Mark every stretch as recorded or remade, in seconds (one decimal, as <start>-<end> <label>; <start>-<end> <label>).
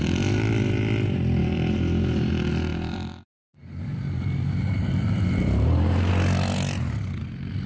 0.0-1.4 recorded; 1.4-2.3 remade; 2.3-2.7 recorded; 2.7-6.1 remade; 6.1-7.7 recorded